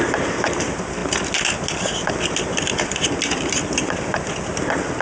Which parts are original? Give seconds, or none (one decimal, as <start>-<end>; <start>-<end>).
0.0-5.0